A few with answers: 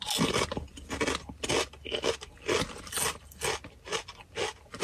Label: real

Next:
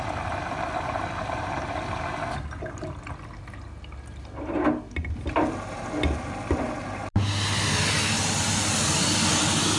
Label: real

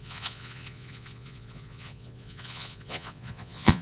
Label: fake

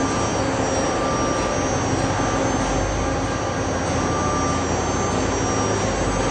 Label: real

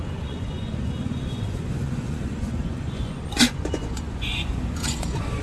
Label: fake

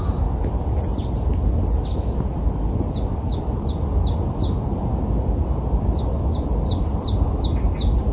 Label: real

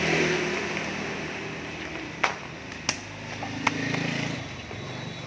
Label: real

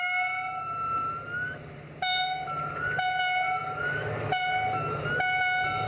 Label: real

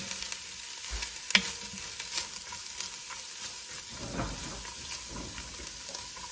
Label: real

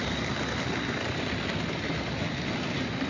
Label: real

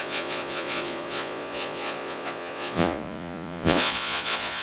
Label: fake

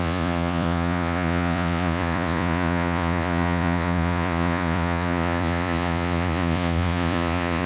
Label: fake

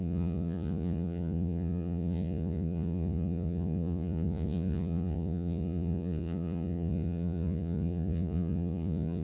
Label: fake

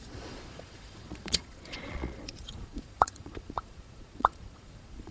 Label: fake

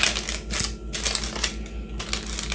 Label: real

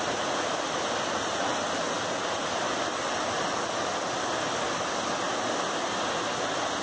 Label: real